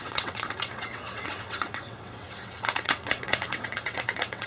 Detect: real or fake fake